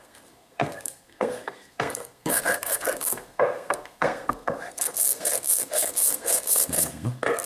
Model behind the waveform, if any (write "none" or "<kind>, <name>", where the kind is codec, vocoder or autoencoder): codec, SNAC